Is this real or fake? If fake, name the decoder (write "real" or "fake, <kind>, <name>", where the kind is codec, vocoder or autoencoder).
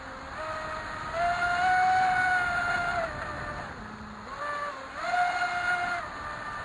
real